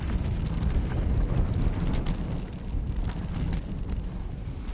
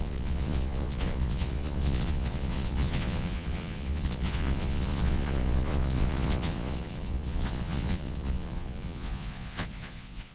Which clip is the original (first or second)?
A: first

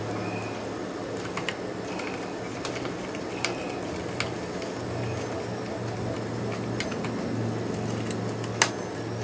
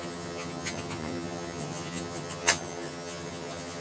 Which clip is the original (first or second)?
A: first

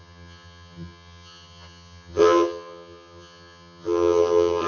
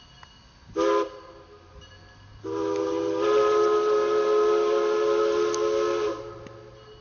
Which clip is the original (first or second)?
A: second